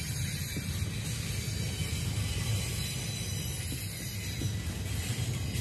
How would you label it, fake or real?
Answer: real